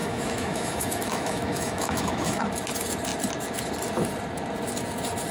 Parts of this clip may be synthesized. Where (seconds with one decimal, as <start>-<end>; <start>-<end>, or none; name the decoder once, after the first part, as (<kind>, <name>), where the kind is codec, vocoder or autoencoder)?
0.0-2.4 (autoencoder, DAC-VAE)